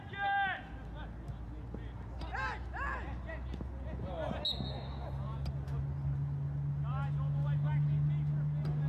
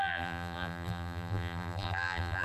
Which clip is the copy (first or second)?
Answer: second